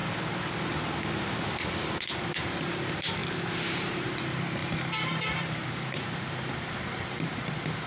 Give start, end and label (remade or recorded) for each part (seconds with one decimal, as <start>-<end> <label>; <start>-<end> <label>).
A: 0.0-2.1 recorded; 2.1-7.9 remade